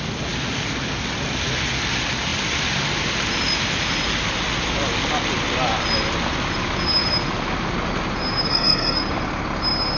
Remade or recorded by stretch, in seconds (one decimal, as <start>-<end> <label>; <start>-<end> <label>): 0.0-8.5 recorded; 8.5-9.0 remade; 9.0-10.0 recorded